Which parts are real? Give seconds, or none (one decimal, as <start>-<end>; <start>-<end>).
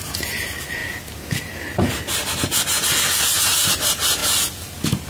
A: 0.8-3.4; 4.2-5.1